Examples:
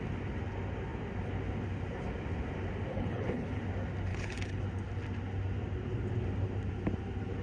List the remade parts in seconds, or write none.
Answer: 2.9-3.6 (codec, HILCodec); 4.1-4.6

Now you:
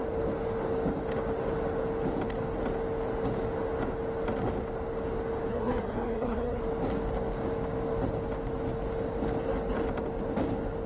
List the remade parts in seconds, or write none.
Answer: 5.5-6.6 (codec, SNAC)